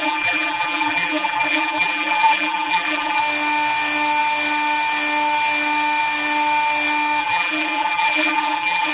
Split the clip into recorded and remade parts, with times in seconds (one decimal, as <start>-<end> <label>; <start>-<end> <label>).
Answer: 0.0-3.2 remade; 3.2-7.2 recorded; 7.2-8.9 remade